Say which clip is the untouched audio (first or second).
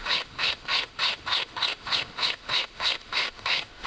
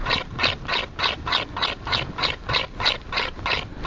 second